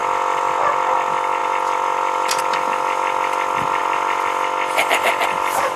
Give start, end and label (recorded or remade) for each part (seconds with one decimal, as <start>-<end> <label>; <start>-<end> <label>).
0.0-0.6 remade; 0.6-1.4 recorded; 1.4-2.4 remade; 2.4-5.8 recorded